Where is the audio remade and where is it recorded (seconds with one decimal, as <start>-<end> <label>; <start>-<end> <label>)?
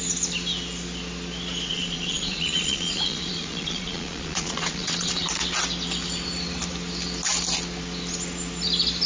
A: 0.0-1.7 recorded; 1.7-5.3 remade; 5.3-9.1 recorded